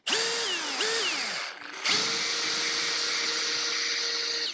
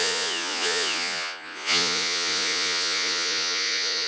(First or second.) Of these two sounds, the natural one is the first